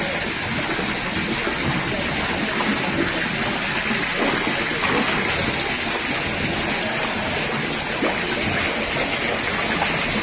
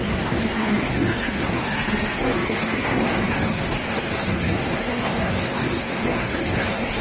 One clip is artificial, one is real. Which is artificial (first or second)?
second